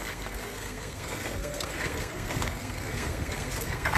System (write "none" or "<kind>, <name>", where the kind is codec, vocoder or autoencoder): codec, SNAC